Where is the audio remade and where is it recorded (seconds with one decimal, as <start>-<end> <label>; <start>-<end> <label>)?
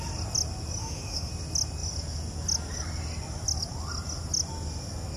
0.0-0.8 recorded; 0.8-1.3 remade; 1.3-5.2 recorded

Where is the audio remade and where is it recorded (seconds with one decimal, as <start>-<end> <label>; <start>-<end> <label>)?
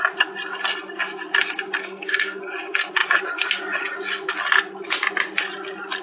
0.0-1.8 recorded; 1.8-2.4 remade; 2.4-6.0 recorded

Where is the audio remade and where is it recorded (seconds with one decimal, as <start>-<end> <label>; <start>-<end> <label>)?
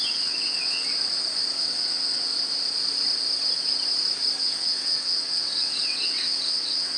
0.0-0.9 remade; 0.9-1.6 recorded; 1.6-2.3 remade; 2.3-4.4 recorded; 4.4-7.0 remade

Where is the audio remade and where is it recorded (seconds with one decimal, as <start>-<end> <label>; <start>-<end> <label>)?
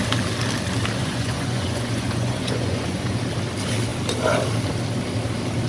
0.0-1.0 recorded; 1.0-3.2 remade; 3.2-5.7 recorded